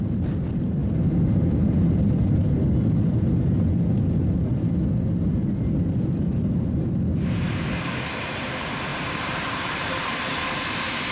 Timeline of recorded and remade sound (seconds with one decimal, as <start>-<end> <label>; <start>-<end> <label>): 0.0-8.9 recorded; 8.9-10.1 remade; 10.1-11.1 recorded